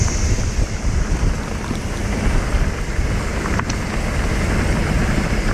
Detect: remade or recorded recorded